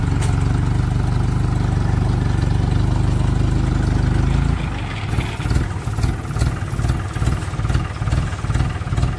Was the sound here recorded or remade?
recorded